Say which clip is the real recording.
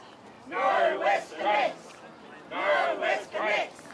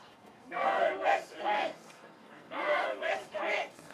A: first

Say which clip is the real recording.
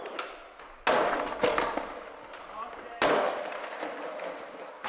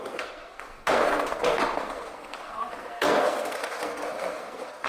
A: first